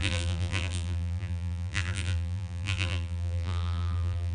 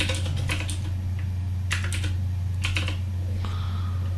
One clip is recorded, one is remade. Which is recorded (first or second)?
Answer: second